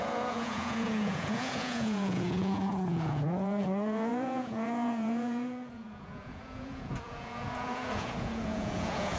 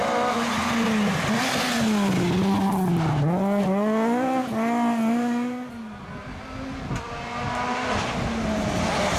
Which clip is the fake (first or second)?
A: first